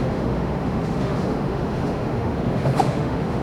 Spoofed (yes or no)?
yes